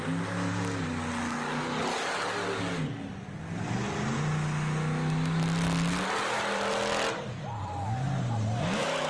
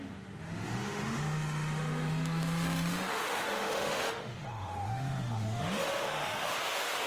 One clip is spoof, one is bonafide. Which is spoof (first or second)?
second